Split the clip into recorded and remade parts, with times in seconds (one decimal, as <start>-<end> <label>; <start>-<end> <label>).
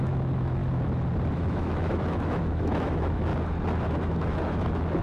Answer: 0.0-0.6 remade; 0.6-1.3 recorded; 1.3-3.3 remade; 3.3-3.9 recorded; 3.9-5.0 remade